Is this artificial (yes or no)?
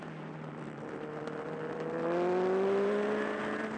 yes